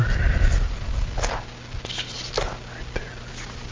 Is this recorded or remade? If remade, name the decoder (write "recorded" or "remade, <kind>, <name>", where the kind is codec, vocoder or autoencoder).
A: recorded